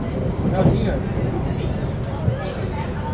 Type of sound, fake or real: real